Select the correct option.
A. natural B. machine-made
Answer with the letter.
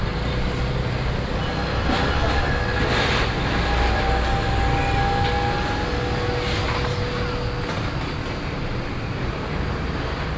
A